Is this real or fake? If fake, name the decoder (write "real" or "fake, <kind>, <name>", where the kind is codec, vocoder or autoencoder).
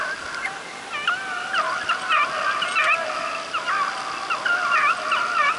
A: real